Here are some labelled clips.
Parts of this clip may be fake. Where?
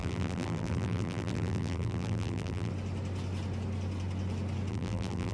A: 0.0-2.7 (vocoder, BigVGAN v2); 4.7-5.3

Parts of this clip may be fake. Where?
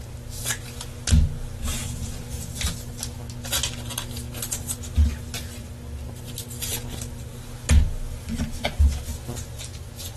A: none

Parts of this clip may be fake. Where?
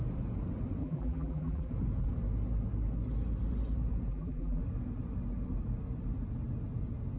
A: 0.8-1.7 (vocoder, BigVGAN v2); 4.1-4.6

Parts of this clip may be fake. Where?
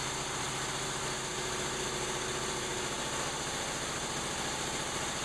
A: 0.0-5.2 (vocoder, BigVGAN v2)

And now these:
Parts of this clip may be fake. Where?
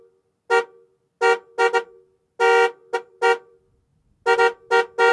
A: none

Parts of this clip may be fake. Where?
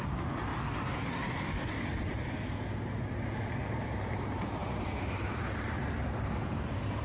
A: 0.0-0.5 (vocoder, BigVGAN v2); 3.5-7.0